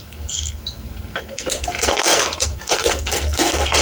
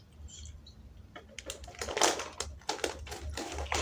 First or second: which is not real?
first